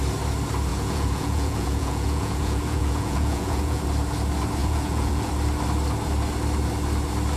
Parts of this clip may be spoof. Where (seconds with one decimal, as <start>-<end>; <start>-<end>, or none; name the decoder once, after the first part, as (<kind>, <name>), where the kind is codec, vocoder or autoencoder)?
0.7-3.8 (vocoder, Vocos); 4.6-5.3